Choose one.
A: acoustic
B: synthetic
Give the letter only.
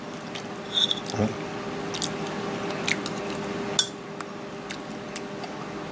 A